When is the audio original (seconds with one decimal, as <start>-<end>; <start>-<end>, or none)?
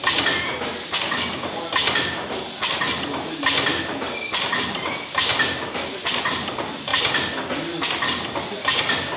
0.0-9.2